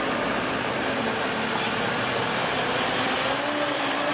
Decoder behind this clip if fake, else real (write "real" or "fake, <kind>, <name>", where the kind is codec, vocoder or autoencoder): real